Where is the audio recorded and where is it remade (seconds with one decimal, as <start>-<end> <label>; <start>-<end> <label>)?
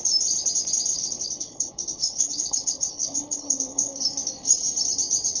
0.0-0.9 recorded; 0.9-4.0 remade; 4.0-5.4 recorded